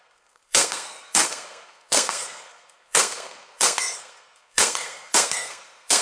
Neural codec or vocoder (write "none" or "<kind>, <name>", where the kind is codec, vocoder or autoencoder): codec, SNAC